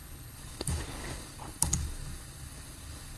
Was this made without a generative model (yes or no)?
no